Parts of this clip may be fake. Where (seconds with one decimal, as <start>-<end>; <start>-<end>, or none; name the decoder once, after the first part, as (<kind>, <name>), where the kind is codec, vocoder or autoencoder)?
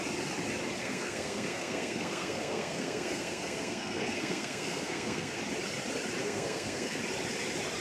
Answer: 0.8-5.4 (codec, SNAC); 6.2-7.0